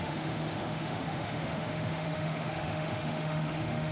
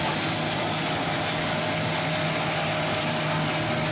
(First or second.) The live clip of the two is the second